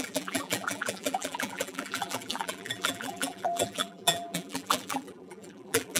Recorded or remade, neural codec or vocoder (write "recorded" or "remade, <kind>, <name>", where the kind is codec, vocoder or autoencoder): remade, vocoder, BigVGAN v2